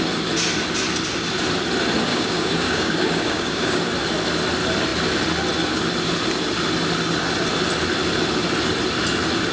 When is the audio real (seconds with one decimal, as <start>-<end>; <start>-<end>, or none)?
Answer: 0.0-2.1; 3.8-9.5